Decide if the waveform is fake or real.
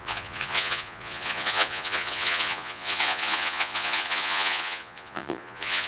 fake